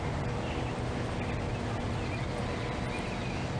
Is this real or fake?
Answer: real